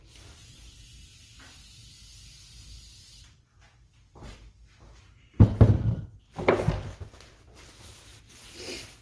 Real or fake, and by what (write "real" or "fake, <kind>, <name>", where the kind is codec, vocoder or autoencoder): real